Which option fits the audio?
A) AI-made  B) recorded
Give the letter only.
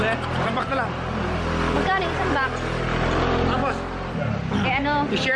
B